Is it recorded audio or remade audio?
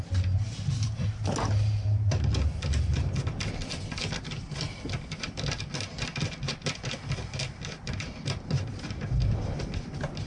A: recorded